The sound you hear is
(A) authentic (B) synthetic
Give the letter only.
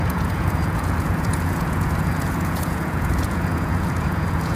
B